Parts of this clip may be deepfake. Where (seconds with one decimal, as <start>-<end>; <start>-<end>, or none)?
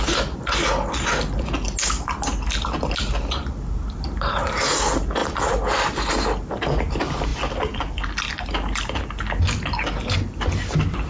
none